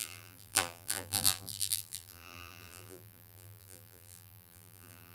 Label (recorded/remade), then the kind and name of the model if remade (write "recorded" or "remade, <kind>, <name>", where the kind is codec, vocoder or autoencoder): remade, vocoder, BigVGAN v2